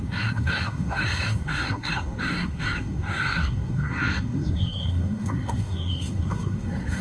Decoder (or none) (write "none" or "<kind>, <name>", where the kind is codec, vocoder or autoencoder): codec, SNAC